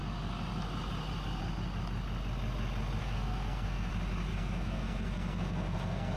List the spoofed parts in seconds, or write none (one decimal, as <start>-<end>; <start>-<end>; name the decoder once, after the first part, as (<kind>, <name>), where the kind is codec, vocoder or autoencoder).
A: 3.0-3.9 (codec, SNAC); 4.3-6.2